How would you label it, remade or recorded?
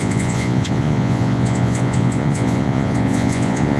remade